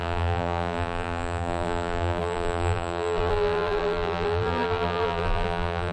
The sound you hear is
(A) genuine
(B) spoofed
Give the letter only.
B